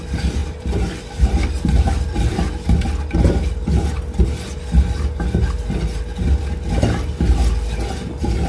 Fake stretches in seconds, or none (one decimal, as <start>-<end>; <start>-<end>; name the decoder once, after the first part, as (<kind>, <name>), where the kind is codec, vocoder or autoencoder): 0.4-2.5 (vocoder, BigVGAN v2)